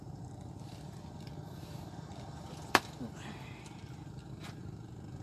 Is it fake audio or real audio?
fake